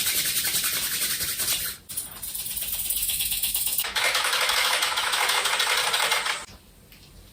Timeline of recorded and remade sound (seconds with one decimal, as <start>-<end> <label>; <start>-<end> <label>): 0.0-3.0 recorded; 3.0-5.5 remade; 5.5-7.3 recorded